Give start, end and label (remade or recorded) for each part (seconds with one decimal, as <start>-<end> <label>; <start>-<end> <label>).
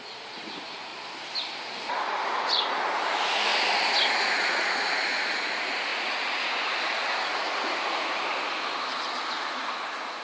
0.0-0.9 remade; 0.9-1.6 recorded; 1.6-3.5 remade; 3.5-4.1 recorded; 4.1-8.3 remade; 8.3-9.3 recorded; 9.3-10.2 remade